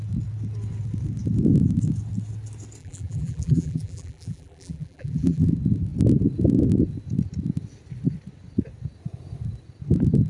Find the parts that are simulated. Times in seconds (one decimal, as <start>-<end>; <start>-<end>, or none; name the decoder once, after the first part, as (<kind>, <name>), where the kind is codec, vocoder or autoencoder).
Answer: 2.8-5.5 (vocoder, BigVGAN v2)